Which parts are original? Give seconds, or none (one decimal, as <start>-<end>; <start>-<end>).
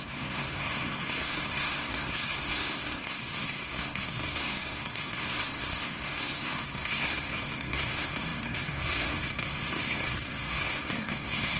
none